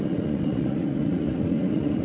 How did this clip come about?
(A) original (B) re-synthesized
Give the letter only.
B